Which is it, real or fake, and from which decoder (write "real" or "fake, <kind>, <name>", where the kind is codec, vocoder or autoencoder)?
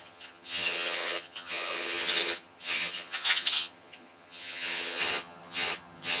fake, vocoder, HiFi-GAN